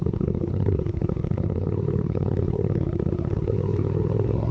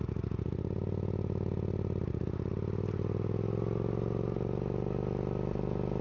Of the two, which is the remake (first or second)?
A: first